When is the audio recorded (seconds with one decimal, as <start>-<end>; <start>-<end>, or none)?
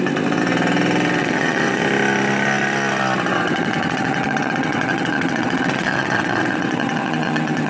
0.0-1.2; 1.8-3.3